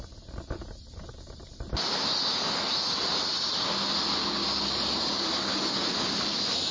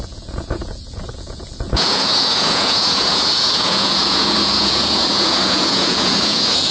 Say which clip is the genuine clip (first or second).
first